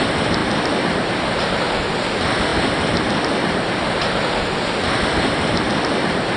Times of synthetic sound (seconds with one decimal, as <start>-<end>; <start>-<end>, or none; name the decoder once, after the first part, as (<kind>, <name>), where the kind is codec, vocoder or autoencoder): none